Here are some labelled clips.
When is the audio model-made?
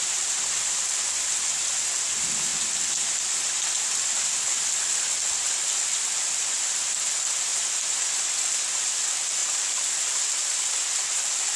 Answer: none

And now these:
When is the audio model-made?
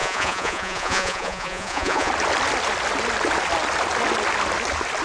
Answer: 0.0-2.1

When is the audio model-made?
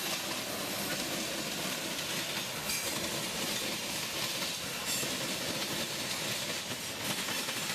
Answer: none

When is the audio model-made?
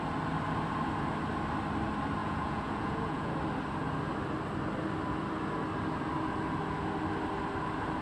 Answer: 2.2-3.3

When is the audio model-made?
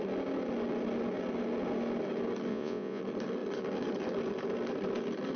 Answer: 2.5-3.0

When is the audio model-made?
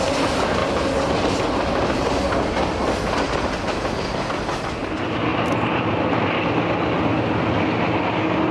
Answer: none